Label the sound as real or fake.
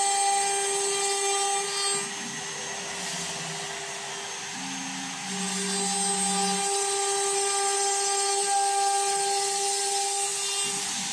real